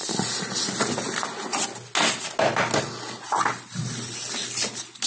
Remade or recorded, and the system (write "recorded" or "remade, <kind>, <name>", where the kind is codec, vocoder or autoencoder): recorded